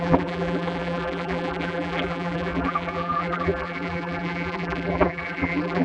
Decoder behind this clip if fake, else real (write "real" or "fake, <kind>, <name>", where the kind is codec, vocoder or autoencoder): fake, vocoder, BigVGAN v2